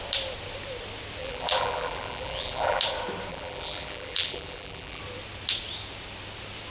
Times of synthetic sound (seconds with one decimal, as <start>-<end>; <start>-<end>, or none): 1.2-2.8; 3.3-5.0